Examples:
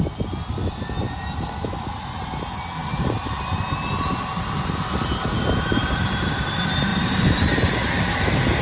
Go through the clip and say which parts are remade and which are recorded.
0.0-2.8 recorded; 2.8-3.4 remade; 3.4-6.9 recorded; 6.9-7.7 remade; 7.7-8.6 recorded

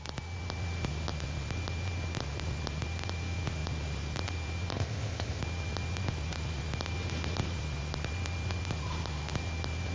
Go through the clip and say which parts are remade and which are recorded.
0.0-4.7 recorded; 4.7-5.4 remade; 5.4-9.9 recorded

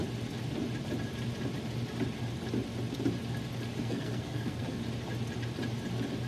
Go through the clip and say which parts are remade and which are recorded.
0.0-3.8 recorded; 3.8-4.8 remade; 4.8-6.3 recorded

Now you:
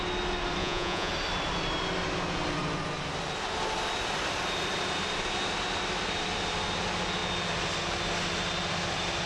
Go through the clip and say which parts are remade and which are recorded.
0.0-0.6 recorded; 0.6-1.1 remade; 1.1-9.3 recorded

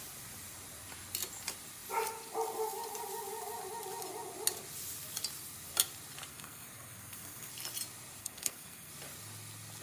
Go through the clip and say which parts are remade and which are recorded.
0.0-6.3 recorded; 6.3-7.5 remade; 7.5-8.2 recorded; 8.2-8.9 remade; 8.9-9.8 recorded

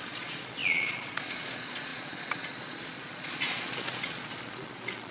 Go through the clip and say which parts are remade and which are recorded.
0.0-5.1 remade